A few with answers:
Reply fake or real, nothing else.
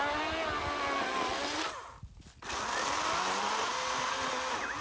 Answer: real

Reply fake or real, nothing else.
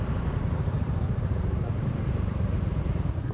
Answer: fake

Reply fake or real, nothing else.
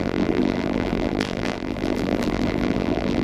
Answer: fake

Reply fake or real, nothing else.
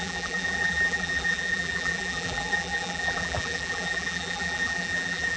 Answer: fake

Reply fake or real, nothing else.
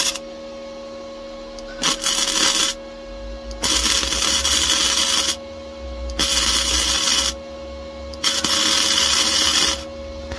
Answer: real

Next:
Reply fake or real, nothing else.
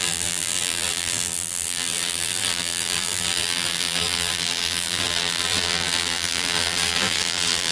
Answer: fake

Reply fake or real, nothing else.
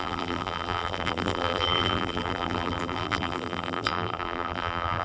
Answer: fake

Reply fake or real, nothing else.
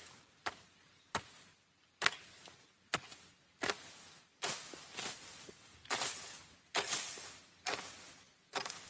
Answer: real